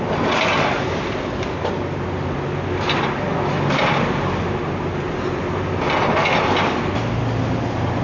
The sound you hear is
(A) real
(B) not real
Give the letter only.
A